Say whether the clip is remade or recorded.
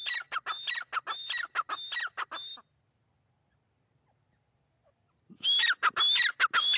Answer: recorded